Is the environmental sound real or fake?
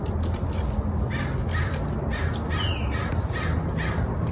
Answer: real